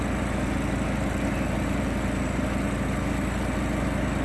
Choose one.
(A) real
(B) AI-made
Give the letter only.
A